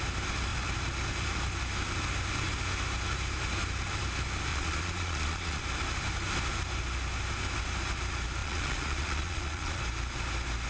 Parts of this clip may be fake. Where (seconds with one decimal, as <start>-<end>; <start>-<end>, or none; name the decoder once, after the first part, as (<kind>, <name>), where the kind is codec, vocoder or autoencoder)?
4.5-5.6 (vocoder, Vocos); 8.4-9.8